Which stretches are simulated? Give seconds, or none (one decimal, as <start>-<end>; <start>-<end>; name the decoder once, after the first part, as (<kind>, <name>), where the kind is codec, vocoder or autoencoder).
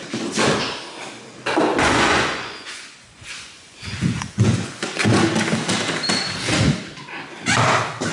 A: 1.7-5.2 (vocoder, Vocos)